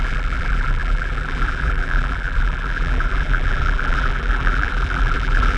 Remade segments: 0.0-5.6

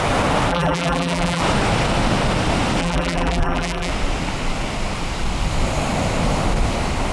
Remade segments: 0.5-1.4; 2.8-3.9